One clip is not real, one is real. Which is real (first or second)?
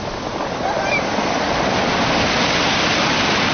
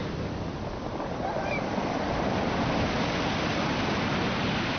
first